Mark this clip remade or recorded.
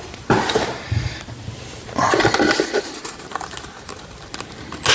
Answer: recorded